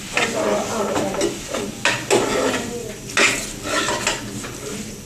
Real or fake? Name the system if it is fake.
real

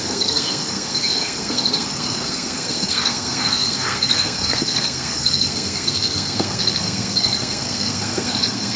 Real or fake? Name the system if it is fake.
fake, codec, SNAC